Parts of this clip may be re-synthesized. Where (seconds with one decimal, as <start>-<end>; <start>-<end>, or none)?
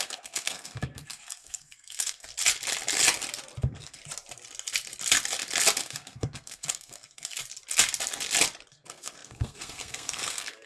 0.0-2.3; 3.6-4.0; 5.8-7.4; 8.7-10.7